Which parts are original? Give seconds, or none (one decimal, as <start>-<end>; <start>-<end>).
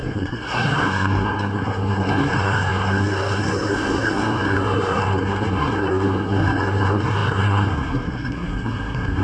none